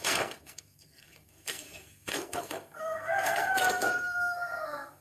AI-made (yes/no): yes